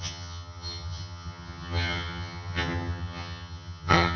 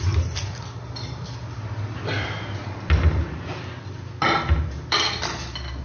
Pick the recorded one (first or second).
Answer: second